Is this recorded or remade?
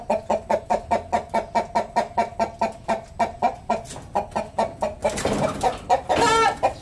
recorded